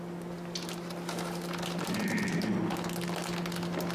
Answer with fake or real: real